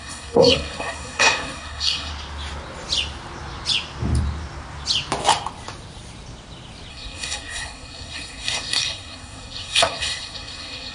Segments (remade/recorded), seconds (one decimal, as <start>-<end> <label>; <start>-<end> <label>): 0.0-2.1 remade; 2.1-6.9 recorded; 6.9-10.9 remade